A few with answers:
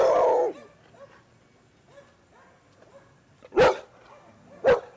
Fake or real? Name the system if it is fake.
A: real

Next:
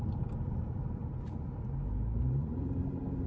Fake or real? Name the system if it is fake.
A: fake, vocoder, BigVGAN v2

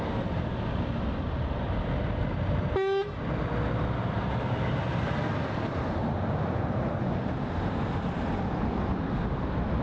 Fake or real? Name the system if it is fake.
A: real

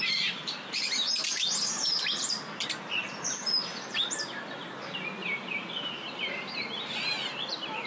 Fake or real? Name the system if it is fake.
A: fake, vocoder, BigVGAN v2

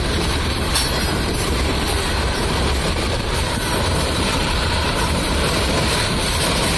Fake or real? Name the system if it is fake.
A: fake, vocoder, BigVGAN v2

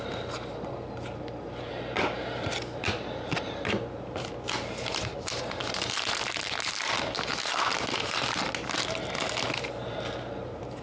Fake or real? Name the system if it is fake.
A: real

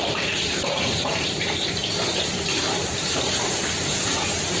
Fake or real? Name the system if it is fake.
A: fake, vocoder, BigVGAN v2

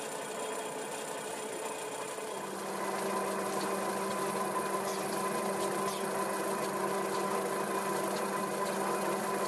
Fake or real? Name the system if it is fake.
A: real